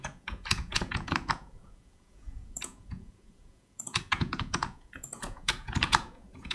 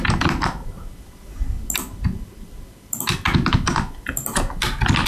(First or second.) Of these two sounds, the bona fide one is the second